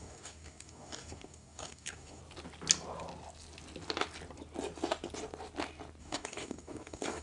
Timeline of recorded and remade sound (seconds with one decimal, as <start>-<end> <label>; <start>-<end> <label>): 0.0-2.2 remade; 2.2-6.0 recorded; 6.0-7.2 remade